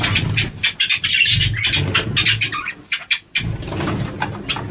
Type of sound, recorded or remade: recorded